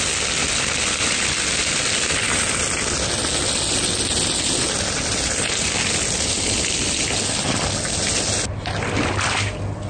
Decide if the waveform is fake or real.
real